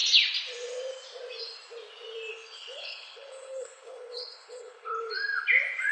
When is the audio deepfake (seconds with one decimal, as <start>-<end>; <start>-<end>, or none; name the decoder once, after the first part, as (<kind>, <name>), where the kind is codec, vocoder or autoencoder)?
2.3-5.1 (codec, HILCodec)